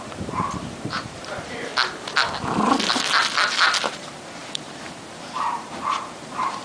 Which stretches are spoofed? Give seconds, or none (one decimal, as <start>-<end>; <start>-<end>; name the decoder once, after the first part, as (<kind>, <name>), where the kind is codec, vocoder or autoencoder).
0.0-1.7 (vocoder, BigVGAN v2); 3.9-6.6